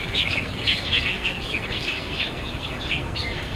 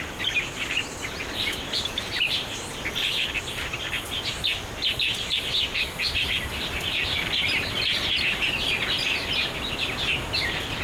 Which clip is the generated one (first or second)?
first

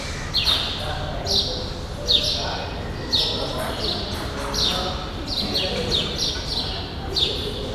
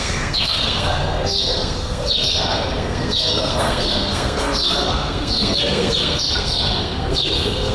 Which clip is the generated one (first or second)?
second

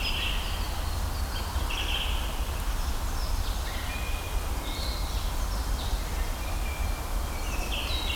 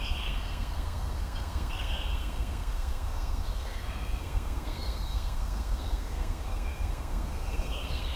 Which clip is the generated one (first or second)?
second